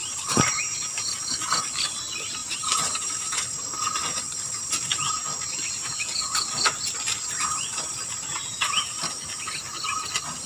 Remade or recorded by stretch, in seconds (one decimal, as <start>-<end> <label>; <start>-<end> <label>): 0.0-0.6 remade; 0.6-2.4 recorded; 2.4-3.7 remade; 3.7-10.5 recorded